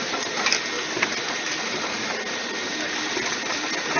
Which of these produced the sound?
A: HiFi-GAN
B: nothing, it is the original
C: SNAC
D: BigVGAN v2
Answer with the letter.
B